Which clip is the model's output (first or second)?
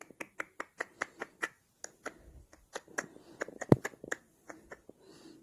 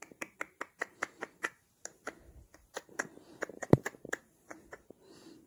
second